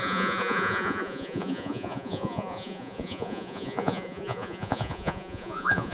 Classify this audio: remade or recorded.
remade